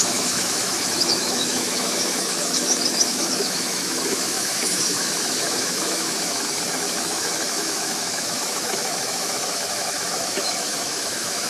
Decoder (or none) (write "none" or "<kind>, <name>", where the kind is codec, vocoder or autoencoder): autoencoder, DAC-VAE